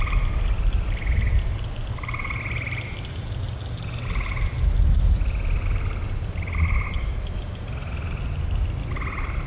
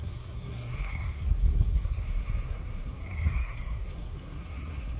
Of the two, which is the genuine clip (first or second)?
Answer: first